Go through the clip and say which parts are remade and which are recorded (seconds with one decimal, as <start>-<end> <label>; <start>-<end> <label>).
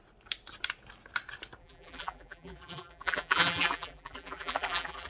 0.0-1.6 recorded; 1.6-5.1 remade